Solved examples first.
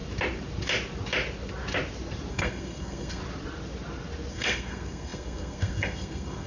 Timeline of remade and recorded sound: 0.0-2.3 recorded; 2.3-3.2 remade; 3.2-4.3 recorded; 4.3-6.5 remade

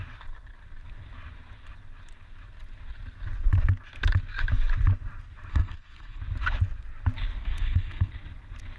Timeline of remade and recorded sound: 0.0-5.5 recorded; 5.5-6.2 remade; 6.2-7.4 recorded; 7.4-8.1 remade; 8.1-8.8 recorded

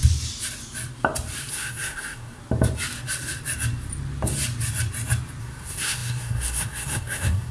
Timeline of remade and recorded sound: 0.0-1.5 recorded; 1.5-2.4 remade; 2.4-5.4 recorded; 5.4-7.5 remade

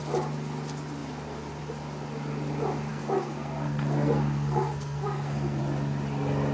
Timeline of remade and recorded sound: 0.0-2.9 recorded; 2.9-5.6 remade; 5.6-6.5 recorded

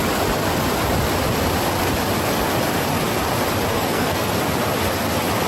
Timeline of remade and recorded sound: 0.0-3.7 recorded; 3.7-4.3 remade; 4.3-5.5 recorded

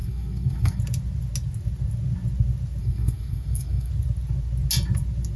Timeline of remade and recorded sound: 0.0-0.8 remade; 0.8-2.8 recorded; 2.8-3.9 remade; 3.9-5.4 recorded

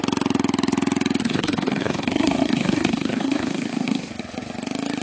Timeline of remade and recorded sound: 0.0-1.2 recorded; 1.2-4.1 remade; 4.1-5.0 recorded

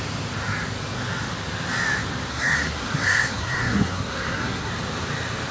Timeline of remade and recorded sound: 0.0-2.3 recorded; 2.3-4.7 remade; 4.7-5.5 recorded